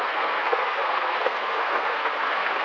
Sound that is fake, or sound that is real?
fake